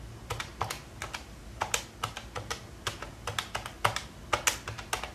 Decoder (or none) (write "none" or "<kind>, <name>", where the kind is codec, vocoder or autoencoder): none